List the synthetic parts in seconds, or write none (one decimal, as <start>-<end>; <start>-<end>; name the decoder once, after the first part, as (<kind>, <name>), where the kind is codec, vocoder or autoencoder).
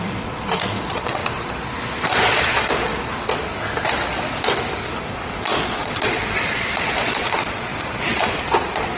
0.0-1.2 (vocoder, Vocos); 1.9-2.9; 5.0-9.0